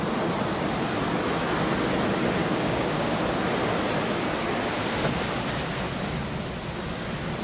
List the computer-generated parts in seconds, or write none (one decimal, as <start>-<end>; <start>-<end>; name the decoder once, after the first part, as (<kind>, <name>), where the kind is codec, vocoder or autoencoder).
2.4-3.2 (codec, DAC)